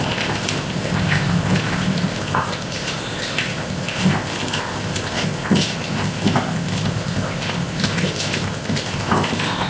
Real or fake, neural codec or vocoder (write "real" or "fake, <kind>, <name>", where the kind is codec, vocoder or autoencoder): fake, codec, ZipCodec